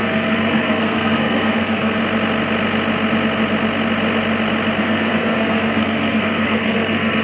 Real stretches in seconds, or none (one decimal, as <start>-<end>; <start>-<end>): 2.0-4.8